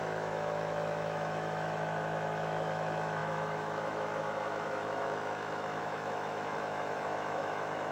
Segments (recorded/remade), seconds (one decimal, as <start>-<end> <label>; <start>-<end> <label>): 0.0-7.9 remade